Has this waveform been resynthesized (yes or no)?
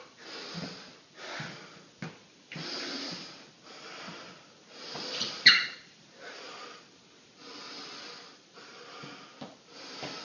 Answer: no